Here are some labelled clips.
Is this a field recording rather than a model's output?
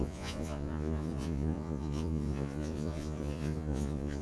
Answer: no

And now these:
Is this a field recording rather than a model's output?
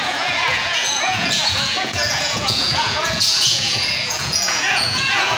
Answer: no